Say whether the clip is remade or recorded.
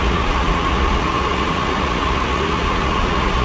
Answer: remade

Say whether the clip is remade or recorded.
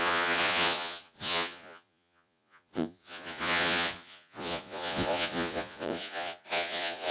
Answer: remade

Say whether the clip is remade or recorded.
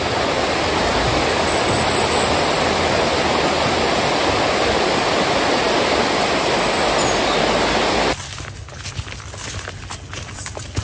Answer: recorded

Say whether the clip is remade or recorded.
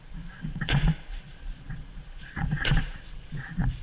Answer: remade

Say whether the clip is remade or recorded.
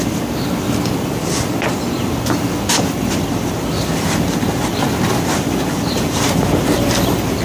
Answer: recorded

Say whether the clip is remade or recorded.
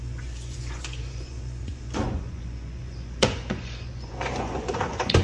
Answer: remade